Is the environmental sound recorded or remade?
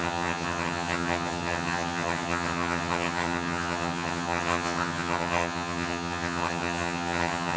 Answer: remade